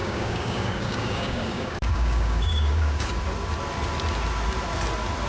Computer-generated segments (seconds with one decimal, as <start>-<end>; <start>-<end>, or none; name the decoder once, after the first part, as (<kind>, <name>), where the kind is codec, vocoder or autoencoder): 0.0-3.2 (codec, DAC)

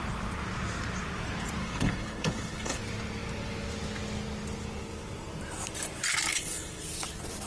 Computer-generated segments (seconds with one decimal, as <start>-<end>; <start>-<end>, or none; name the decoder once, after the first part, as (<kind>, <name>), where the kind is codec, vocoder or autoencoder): 1.6-2.8 (codec, HILCodec); 6.3-6.8

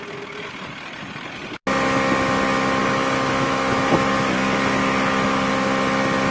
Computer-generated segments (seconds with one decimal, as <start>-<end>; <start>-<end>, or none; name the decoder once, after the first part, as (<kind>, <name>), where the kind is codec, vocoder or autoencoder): 2.8-4.1 (autoencoder, DAC-VAE); 4.8-5.5

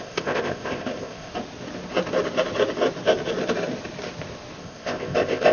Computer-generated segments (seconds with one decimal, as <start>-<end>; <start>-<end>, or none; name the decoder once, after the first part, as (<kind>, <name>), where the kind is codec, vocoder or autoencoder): 0.0-1.3 (codec, ZipCodec); 4.6-5.5

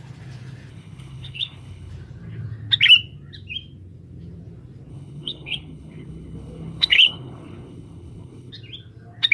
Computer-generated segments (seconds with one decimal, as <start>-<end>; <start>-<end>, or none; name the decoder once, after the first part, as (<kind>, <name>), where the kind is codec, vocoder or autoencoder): 0.7-1.9 (codec, HILCodec); 4.9-8.5

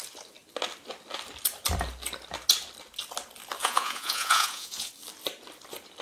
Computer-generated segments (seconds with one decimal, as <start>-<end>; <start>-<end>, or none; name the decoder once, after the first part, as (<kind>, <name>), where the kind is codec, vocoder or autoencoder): 3.6-4.9 (vocoder, Vocos)

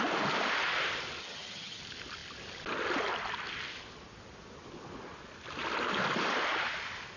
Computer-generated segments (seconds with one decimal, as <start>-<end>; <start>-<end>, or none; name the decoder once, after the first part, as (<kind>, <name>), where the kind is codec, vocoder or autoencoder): 1.2-1.8 (vocoder, HiFi-GAN)

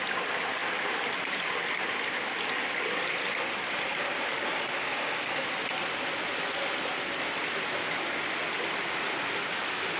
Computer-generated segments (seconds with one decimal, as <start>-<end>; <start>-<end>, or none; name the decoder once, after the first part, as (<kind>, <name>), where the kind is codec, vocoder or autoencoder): 4.3-5.4 (codec, DAC)